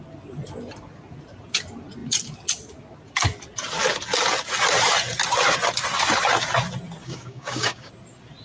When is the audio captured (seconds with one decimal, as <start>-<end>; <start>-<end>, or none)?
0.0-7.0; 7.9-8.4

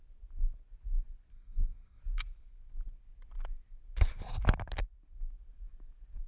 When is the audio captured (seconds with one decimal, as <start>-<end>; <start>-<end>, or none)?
0.0-1.3; 2.0-6.3

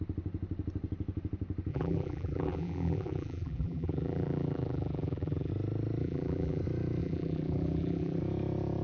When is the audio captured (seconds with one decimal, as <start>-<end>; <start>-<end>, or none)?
0.0-1.7; 5.5-6.0; 6.6-7.0; 8.2-8.8